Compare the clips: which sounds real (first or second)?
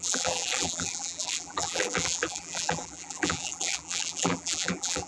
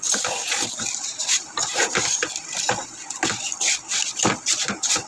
second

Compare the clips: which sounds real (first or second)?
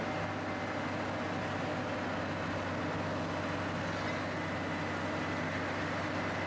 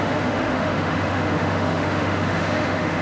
first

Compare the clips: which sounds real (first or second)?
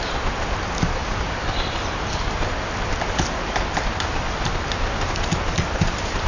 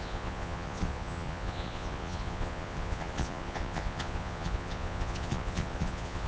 first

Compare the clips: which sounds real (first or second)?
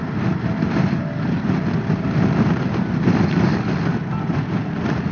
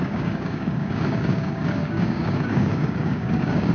first